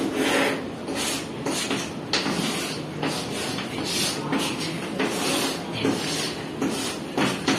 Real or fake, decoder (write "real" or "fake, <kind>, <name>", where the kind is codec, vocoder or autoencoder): real